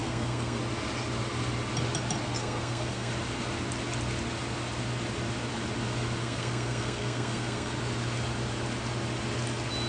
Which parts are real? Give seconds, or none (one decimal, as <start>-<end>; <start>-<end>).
0.6-2.4; 3.1-6.2; 7.7-9.9